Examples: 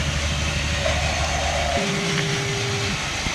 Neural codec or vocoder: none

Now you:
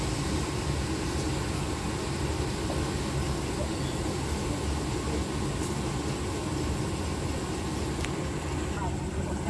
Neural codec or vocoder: none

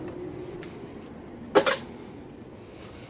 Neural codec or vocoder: none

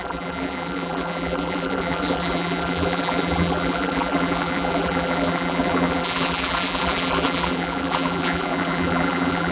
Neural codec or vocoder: vocoder, BigVGAN v2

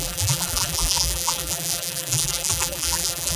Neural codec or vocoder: vocoder, BigVGAN v2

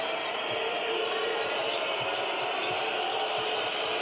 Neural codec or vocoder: vocoder, BigVGAN v2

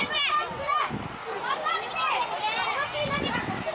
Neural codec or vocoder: none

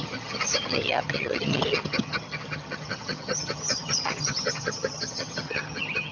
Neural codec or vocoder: vocoder, HiFi-GAN